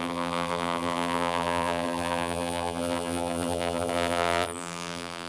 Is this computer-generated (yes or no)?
yes